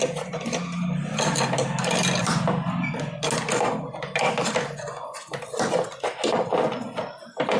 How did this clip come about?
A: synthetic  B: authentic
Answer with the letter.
B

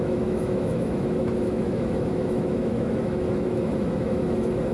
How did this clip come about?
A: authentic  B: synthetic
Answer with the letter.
B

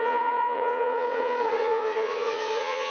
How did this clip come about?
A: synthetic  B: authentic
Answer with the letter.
A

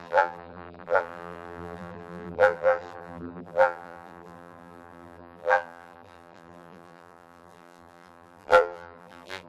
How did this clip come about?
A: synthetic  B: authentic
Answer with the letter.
A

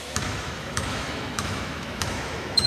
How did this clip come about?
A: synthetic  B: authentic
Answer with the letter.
A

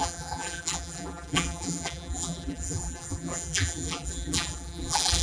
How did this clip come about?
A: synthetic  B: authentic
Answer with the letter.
A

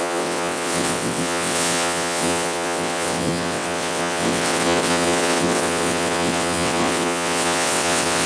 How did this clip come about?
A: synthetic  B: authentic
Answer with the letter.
A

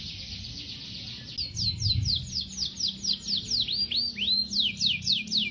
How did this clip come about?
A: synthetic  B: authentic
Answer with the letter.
B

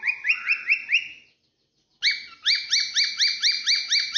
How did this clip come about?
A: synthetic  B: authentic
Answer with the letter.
B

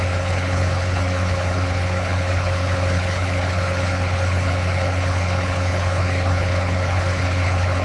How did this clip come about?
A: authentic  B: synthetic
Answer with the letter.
B